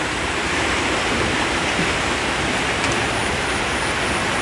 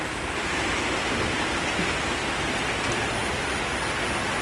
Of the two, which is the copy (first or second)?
first